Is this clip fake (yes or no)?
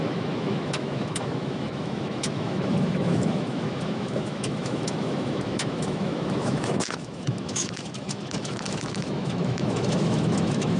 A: yes